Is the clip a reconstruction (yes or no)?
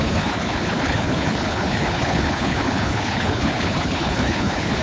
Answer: yes